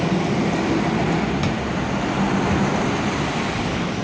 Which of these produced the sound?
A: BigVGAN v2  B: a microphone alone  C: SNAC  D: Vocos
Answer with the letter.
B